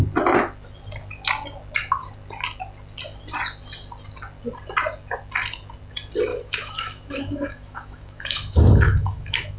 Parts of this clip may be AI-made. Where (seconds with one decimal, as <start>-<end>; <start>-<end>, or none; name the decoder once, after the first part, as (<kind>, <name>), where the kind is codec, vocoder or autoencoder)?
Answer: 6.3-9.6 (autoencoder, DAC-VAE)